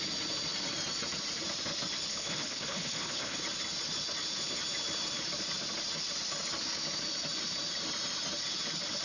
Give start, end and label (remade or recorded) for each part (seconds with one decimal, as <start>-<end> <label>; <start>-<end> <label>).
0.0-2.1 recorded; 2.1-3.4 remade; 3.4-9.0 recorded